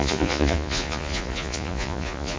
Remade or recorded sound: remade